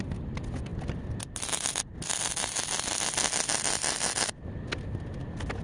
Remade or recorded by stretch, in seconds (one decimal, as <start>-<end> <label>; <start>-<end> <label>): 0.0-5.6 recorded